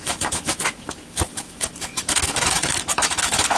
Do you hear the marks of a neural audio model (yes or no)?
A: yes